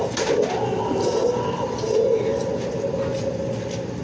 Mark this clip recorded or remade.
recorded